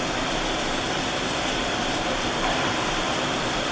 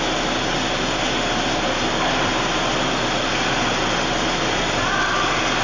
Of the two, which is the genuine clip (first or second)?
second